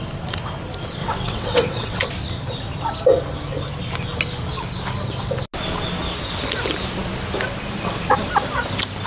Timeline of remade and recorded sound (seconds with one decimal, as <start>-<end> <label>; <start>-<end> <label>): 0.0-1.0 recorded; 1.0-2.0 remade; 2.0-9.1 recorded